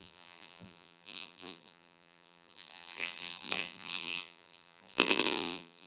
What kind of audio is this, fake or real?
fake